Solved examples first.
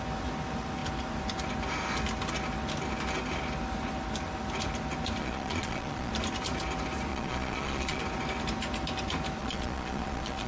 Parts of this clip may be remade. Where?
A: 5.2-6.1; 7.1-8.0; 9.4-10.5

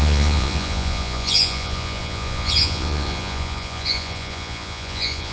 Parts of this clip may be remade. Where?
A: 0.0-5.3